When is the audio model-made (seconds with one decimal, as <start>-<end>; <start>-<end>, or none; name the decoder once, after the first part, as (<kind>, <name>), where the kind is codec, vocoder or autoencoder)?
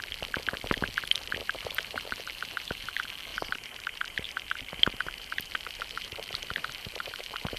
1.4-2.9 (vocoder, BigVGAN v2); 3.3-7.6